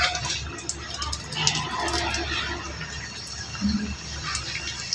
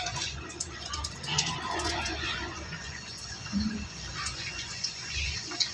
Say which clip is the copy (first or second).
second